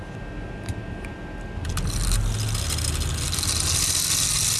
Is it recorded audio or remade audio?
recorded